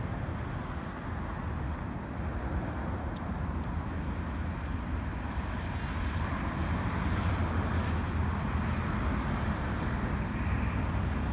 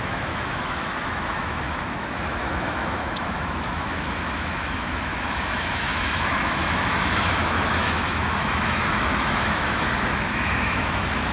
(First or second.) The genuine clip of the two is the first